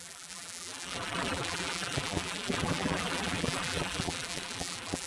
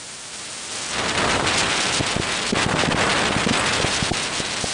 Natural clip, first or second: second